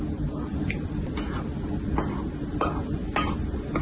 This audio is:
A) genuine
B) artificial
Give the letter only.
A